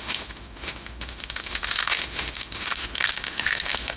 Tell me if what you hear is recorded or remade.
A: remade